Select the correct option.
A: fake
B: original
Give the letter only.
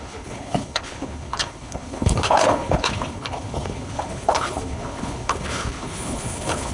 A